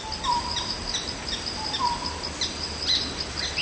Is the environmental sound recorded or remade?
recorded